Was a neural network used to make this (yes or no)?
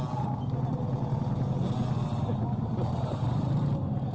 no